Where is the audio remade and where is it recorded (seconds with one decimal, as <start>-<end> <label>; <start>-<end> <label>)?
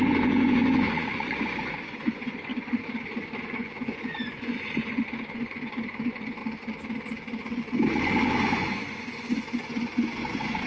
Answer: 0.0-2.5 remade; 2.5-3.4 recorded; 3.4-6.4 remade; 6.4-7.4 recorded; 7.4-10.7 remade